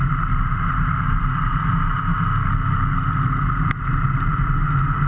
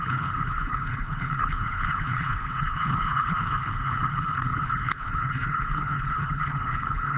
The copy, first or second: second